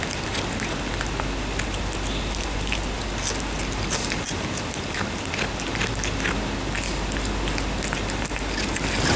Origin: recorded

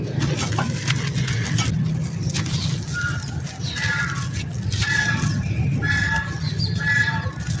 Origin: recorded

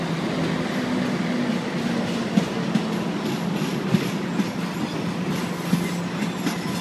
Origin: recorded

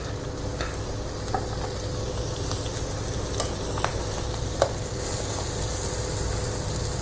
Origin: recorded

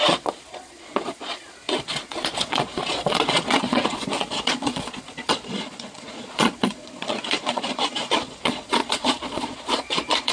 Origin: remade